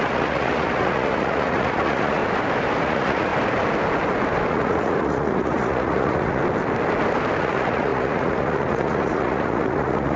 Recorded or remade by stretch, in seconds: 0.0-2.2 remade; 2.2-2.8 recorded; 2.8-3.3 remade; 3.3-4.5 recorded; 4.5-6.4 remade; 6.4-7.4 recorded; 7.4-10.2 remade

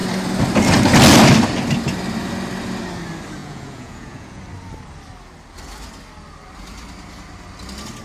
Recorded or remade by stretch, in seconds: 0.0-3.4 recorded; 3.4-4.4 remade; 4.4-8.0 recorded

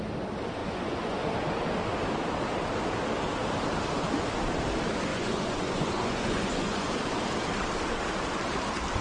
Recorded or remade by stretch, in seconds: 0.0-0.6 recorded; 0.6-1.3 remade; 1.3-5.1 recorded; 5.1-6.9 remade; 6.9-9.0 recorded

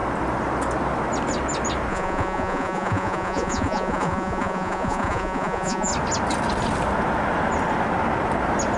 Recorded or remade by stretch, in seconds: 0.0-1.9 recorded; 1.9-5.9 remade; 5.9-8.8 recorded

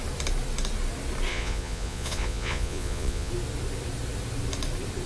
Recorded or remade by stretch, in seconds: 0.0-1.3 recorded; 1.3-3.3 remade; 3.3-5.1 recorded